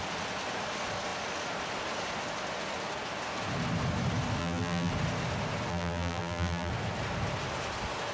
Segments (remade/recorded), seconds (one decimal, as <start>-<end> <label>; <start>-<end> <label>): 0.0-4.4 recorded; 4.4-4.9 remade; 4.9-5.7 recorded; 5.7-6.7 remade; 6.7-8.1 recorded